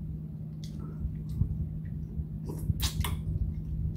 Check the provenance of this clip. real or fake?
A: real